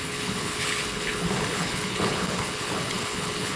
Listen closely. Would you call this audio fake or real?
fake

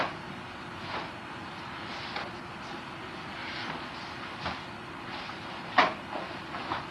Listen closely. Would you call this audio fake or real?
real